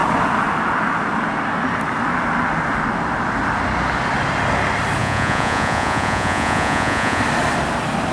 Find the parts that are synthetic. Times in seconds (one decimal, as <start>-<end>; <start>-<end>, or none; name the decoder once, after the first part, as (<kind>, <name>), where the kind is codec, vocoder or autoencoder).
5.0-7.2 (vocoder, Vocos)